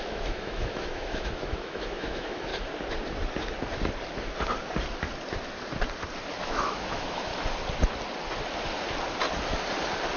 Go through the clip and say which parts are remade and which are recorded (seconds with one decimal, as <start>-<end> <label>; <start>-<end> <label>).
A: 0.0-2.5 remade; 2.5-6.4 recorded; 6.4-7.3 remade; 7.3-10.2 recorded